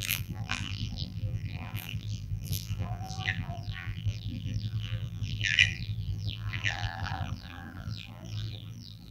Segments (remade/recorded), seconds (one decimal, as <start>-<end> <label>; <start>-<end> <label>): 0.0-9.1 remade